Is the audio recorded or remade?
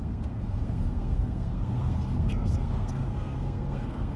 remade